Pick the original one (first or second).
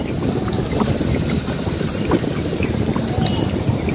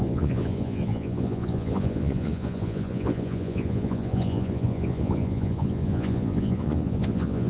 first